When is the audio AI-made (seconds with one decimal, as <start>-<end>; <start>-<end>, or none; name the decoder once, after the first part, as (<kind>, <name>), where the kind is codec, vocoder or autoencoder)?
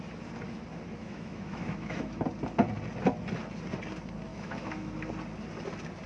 1.0-2.2 (autoencoder, DAC-VAE); 4.3-4.9